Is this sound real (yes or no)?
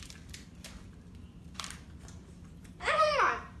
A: no